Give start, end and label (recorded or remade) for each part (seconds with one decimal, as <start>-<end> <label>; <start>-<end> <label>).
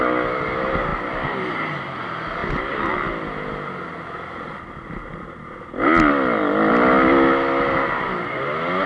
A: 0.0-8.9 recorded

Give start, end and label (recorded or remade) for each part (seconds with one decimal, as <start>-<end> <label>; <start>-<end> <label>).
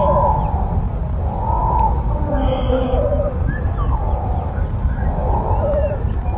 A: 0.0-6.4 recorded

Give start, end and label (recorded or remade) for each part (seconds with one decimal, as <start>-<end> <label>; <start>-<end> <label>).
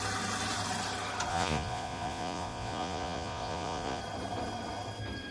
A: 0.0-1.3 recorded; 1.3-4.0 remade; 4.0-5.3 recorded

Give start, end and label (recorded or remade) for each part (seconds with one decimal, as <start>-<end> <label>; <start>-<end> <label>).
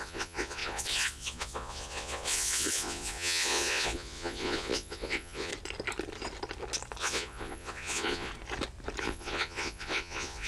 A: 0.0-5.5 remade; 5.5-7.0 recorded; 7.0-8.3 remade; 8.3-9.0 recorded; 9.0-10.5 remade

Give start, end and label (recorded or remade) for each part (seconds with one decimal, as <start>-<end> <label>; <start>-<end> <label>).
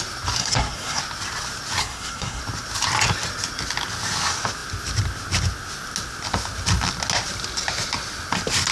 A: 0.0-0.4 recorded; 0.4-1.0 remade; 1.0-1.8 recorded; 1.8-2.4 remade; 2.4-8.7 recorded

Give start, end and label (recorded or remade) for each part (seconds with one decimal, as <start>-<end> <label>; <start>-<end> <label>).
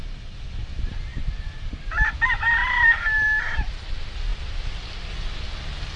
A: 0.0-1.1 recorded; 1.1-2.1 remade; 2.1-2.6 recorded; 2.6-3.7 remade; 3.7-6.0 recorded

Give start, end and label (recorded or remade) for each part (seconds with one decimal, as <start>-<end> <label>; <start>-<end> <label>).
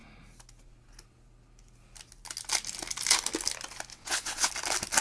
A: 0.0-3.9 recorded; 3.9-4.5 remade; 4.5-5.0 recorded